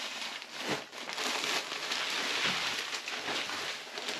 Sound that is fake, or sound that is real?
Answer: real